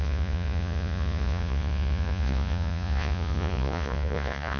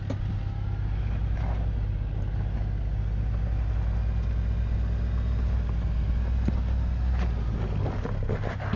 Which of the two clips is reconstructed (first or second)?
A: first